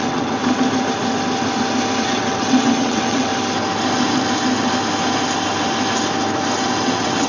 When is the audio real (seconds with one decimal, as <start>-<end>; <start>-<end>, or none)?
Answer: 0.4-2.0; 3.3-6.8